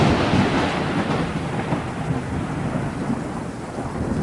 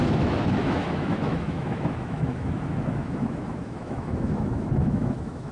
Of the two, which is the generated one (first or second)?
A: second